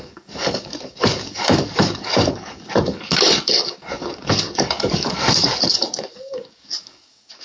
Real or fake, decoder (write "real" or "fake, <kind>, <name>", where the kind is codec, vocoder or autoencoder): fake, codec, DAC